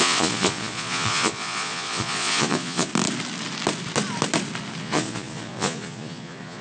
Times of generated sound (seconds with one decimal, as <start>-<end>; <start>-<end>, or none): 0.0-2.9; 4.8-6.6